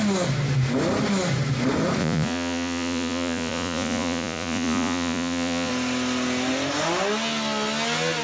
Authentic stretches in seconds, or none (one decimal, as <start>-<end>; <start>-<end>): 0.0-2.0; 5.7-8.2